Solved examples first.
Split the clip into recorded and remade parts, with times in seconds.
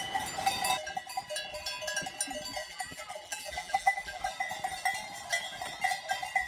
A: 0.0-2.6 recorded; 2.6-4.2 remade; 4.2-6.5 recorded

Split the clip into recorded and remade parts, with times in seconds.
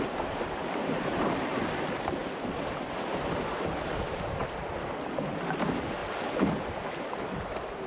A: 0.0-0.6 recorded; 0.6-1.5 remade; 1.5-6.0 recorded; 6.0-6.8 remade; 6.8-7.9 recorded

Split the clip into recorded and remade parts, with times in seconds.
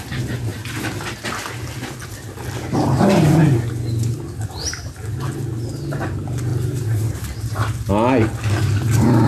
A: 0.0-6.5 recorded; 6.5-7.9 remade; 7.9-9.3 recorded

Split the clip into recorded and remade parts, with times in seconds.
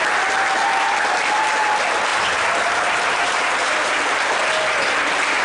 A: 0.0-2.1 recorded; 2.1-3.9 remade; 3.9-5.4 recorded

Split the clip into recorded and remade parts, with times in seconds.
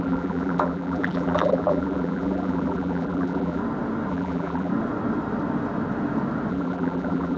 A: 0.0-3.6 remade; 3.6-4.1 recorded; 4.1-4.7 remade; 4.7-6.5 recorded; 6.5-7.4 remade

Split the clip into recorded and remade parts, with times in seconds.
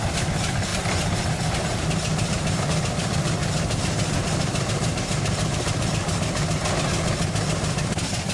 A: 0.0-0.7 recorded; 0.7-2.6 remade; 2.6-3.4 recorded; 3.4-5.9 remade; 5.9-8.3 recorded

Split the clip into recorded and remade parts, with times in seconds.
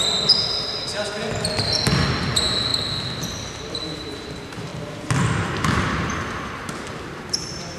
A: 0.0-1.0 remade; 1.0-2.2 recorded; 2.2-2.7 remade; 2.7-3.7 recorded; 3.7-4.7 remade; 4.7-5.3 recorded; 5.3-7.8 remade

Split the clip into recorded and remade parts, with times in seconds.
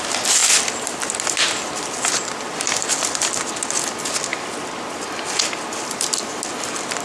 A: 0.0-7.0 recorded